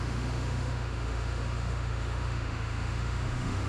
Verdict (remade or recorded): remade